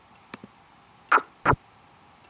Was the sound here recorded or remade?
recorded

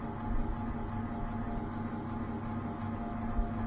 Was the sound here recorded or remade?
recorded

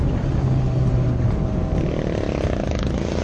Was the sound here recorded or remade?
recorded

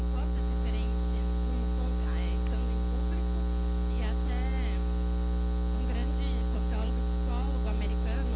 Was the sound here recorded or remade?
recorded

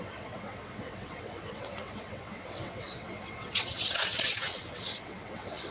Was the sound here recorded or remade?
remade